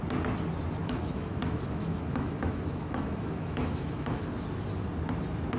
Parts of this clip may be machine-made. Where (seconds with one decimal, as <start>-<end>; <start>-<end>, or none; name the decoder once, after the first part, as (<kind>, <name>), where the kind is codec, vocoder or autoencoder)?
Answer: 0.8-4.2 (autoencoder, DAC-VAE)